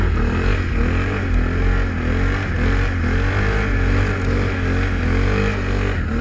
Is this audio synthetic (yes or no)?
no